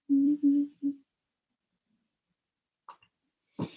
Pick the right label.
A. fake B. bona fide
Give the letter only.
A